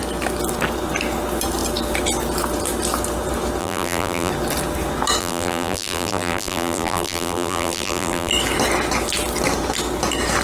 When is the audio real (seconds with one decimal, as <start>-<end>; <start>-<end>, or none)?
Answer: 0.0-3.6; 4.3-5.2; 8.3-10.4